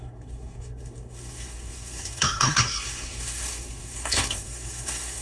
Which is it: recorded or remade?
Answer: remade